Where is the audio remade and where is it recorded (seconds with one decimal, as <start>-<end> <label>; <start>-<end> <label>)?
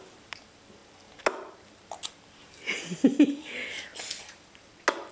0.0-5.1 recorded